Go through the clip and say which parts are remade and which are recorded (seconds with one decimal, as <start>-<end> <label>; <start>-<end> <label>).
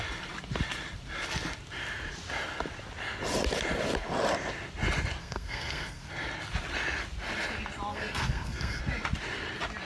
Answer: 0.0-5.2 recorded; 5.2-6.1 remade; 6.1-7.9 recorded; 7.9-8.8 remade; 8.8-9.8 recorded